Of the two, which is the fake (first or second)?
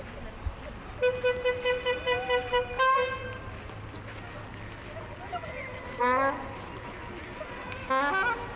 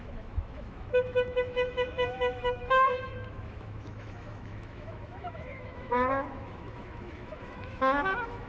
second